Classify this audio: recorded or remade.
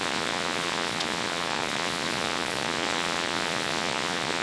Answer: remade